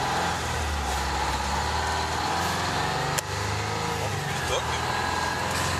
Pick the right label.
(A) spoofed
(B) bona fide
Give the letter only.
B